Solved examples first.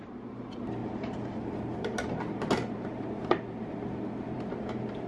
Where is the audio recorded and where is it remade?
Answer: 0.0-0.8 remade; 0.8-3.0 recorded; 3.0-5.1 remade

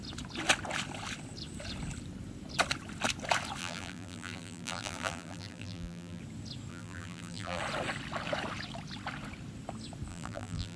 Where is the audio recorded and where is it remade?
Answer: 0.0-3.6 recorded; 3.6-6.2 remade; 6.2-6.7 recorded; 6.7-7.6 remade; 7.6-10.1 recorded; 10.1-10.8 remade

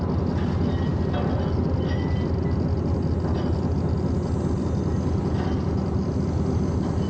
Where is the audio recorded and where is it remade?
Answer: 0.0-7.1 recorded

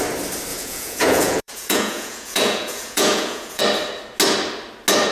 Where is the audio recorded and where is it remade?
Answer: 0.0-0.5 recorded; 0.5-3.6 remade; 3.6-5.1 recorded

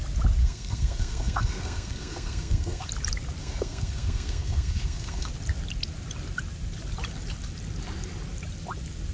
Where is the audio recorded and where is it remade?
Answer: 0.0-0.4 recorded; 0.4-2.9 remade; 2.9-3.4 recorded; 3.4-5.3 remade; 5.3-9.1 recorded

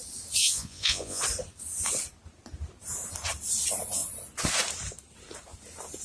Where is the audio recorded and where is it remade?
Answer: 0.0-0.4 recorded; 0.4-1.2 remade; 1.2-6.0 recorded

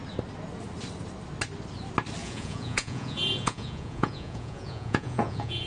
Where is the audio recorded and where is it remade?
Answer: 0.0-2.2 recorded; 2.2-5.7 remade